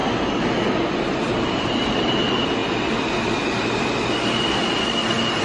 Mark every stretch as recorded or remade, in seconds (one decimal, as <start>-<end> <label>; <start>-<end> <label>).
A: 0.0-0.9 recorded; 0.9-2.6 remade; 2.6-4.8 recorded; 4.8-5.4 remade